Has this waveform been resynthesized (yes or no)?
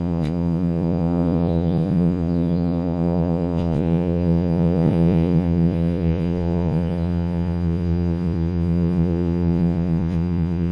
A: yes